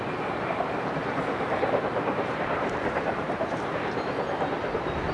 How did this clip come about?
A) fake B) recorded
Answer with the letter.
A